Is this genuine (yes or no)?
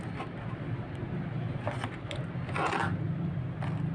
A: yes